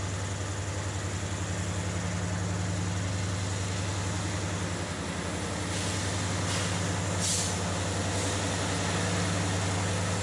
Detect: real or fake real